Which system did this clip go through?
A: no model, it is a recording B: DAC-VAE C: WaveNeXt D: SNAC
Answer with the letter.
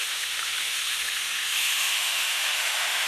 B